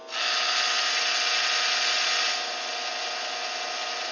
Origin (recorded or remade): recorded